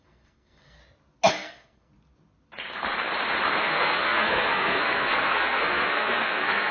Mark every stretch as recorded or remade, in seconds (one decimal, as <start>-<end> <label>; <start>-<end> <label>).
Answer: 0.0-0.8 remade; 0.8-1.3 recorded; 1.3-1.9 remade; 1.9-3.6 recorded; 3.6-6.7 remade